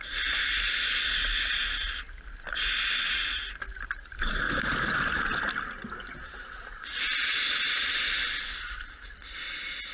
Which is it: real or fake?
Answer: real